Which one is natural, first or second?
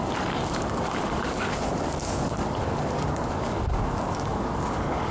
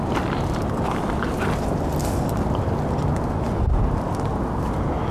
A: second